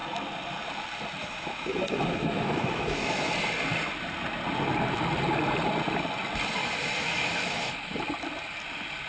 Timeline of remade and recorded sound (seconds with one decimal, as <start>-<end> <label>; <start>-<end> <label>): 0.0-1.2 recorded; 1.2-3.3 remade; 3.3-6.6 recorded; 6.6-8.0 remade; 8.0-9.1 recorded